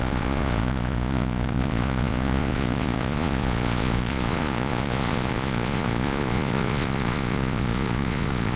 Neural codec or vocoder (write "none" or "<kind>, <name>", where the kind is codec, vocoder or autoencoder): vocoder, Vocos